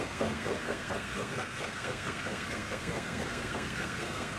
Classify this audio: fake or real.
fake